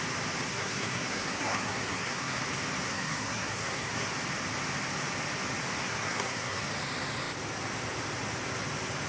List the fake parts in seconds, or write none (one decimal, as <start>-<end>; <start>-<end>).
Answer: 0.5-2.4; 2.9-4.1; 5.8-6.6